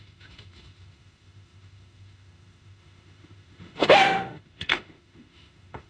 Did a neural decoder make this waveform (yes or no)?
yes